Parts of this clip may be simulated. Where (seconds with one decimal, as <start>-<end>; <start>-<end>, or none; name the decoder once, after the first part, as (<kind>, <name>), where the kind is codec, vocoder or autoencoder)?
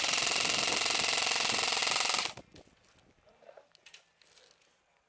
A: none